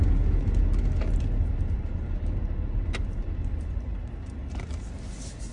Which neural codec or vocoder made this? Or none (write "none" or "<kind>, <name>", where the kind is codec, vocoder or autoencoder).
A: none